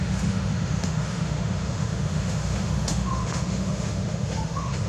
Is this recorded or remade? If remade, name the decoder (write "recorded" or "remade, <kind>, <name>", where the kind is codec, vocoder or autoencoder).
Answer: remade, autoencoder, DAC-VAE